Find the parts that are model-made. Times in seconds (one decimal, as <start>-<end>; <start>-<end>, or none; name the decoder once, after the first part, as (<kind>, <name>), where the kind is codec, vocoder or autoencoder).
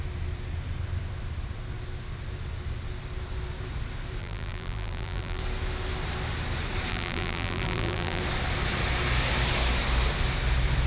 4.2-5.4 (vocoder, BigVGAN v2); 6.9-8.2